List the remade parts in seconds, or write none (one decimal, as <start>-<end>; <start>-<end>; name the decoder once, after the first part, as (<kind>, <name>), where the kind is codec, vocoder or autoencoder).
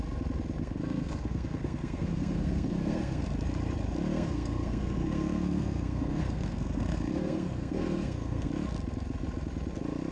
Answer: 0.6-3.2 (codec, SNAC); 4.1-8.5